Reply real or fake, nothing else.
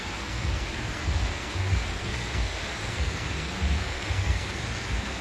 fake